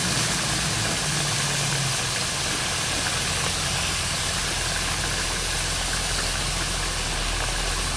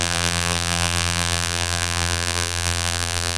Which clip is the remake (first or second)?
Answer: second